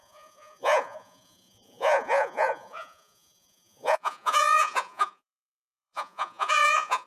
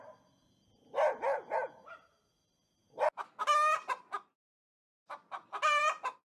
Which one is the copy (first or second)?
first